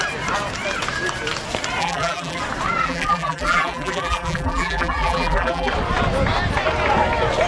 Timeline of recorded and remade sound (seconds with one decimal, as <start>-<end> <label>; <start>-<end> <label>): 0.0-1.8 recorded; 1.8-2.4 remade; 2.4-2.8 recorded; 2.8-5.7 remade; 5.7-7.5 recorded